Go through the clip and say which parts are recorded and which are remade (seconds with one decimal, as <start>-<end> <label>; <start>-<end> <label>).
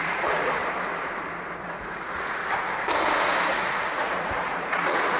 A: 0.0-0.6 remade; 0.6-1.6 recorded; 1.6-2.4 remade; 2.4-3.5 recorded; 3.5-5.2 remade